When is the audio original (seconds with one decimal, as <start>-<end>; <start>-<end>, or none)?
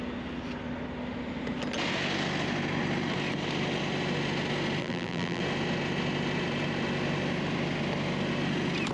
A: 0.0-4.8; 5.4-8.9